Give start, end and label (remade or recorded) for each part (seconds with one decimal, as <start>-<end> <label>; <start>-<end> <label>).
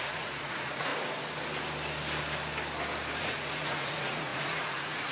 0.0-0.9 remade; 0.9-3.2 recorded; 3.2-5.1 remade